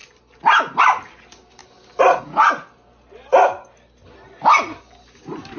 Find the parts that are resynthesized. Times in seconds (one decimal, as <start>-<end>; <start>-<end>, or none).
none